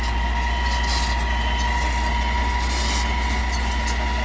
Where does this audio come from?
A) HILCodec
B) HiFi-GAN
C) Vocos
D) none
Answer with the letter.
D